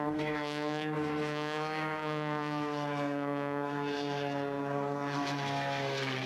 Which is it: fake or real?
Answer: fake